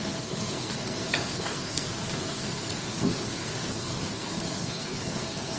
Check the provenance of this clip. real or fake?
fake